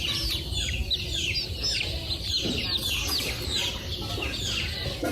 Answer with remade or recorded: recorded